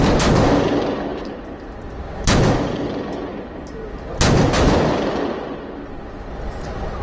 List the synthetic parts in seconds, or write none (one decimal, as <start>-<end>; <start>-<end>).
none